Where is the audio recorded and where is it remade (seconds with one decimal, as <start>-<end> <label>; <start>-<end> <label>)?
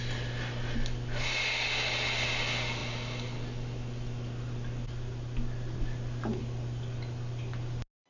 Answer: 0.0-8.1 recorded